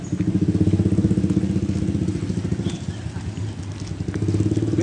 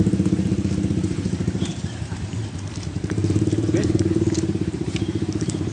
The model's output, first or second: second